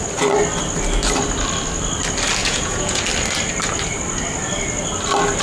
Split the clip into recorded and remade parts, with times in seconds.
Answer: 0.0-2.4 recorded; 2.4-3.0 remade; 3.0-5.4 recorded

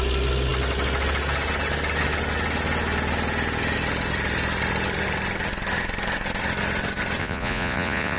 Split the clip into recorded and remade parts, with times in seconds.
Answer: 0.0-7.2 recorded; 7.2-8.2 remade